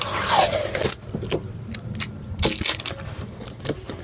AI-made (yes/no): no